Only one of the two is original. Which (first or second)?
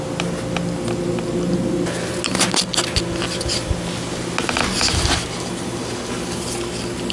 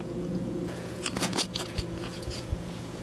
first